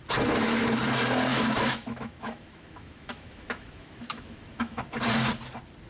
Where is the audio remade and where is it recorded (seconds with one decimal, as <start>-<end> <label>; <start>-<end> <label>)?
0.0-1.3 recorded; 1.3-4.8 remade; 4.8-5.9 recorded